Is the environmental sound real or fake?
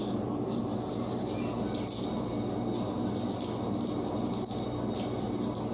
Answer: real